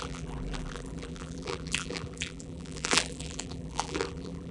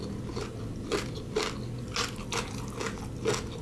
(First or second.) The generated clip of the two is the first